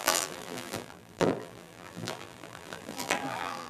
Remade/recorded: remade